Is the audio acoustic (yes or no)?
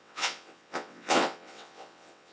no